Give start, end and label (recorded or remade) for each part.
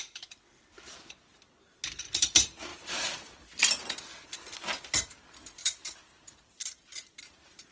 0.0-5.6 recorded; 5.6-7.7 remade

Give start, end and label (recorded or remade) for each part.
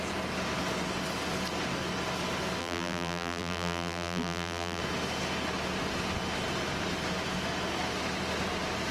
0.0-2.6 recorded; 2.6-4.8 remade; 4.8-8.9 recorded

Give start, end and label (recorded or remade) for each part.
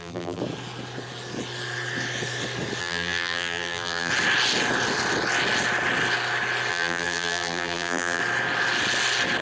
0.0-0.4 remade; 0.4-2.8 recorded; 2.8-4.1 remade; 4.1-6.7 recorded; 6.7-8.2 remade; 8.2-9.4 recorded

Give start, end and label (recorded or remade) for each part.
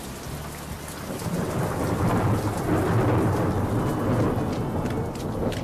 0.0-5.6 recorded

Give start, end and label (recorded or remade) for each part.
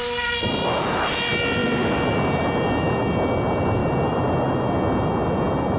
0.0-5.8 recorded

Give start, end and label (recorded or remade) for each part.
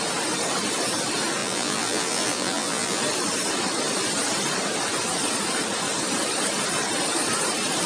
0.0-1.4 recorded; 1.4-3.0 remade; 3.0-7.9 recorded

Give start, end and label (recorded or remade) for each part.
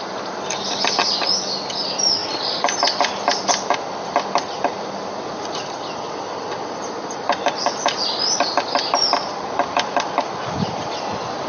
0.0-2.2 recorded; 2.2-3.5 remade; 3.5-11.5 recorded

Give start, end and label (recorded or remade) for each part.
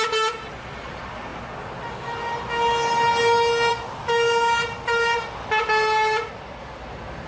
0.0-7.3 recorded